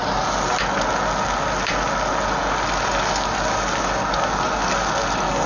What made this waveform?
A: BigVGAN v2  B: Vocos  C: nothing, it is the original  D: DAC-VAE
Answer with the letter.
C